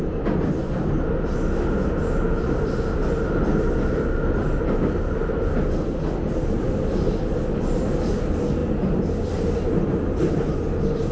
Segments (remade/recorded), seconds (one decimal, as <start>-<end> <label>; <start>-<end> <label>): 0.0-11.1 recorded